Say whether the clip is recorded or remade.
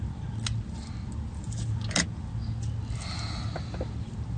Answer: recorded